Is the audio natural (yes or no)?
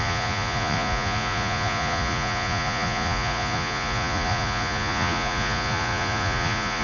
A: no